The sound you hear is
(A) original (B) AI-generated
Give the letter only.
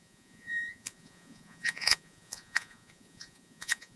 B